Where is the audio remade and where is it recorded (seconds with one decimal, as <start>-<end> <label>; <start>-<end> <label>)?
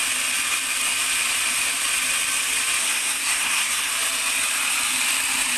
0.0-2.8 recorded; 2.8-3.9 remade; 3.9-5.6 recorded